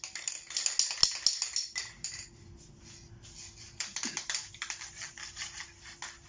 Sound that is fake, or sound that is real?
real